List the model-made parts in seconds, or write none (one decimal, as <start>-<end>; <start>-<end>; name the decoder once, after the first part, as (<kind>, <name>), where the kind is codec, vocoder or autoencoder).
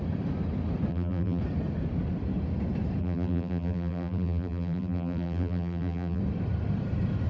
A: 0.9-1.4 (vocoder, BigVGAN v2); 3.0-6.2